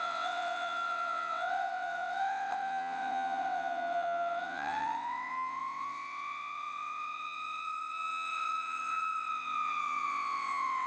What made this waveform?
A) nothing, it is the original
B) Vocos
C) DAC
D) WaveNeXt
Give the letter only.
D